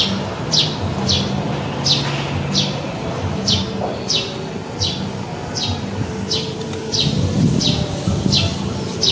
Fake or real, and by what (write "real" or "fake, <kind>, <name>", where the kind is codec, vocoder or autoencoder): real